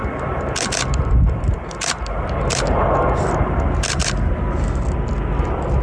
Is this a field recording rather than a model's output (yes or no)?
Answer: no